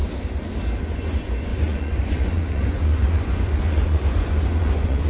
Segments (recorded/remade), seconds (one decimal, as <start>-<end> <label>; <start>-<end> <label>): 0.0-0.8 recorded; 0.8-5.1 remade